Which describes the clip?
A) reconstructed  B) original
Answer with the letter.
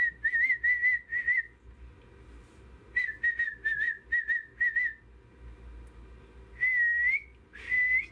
B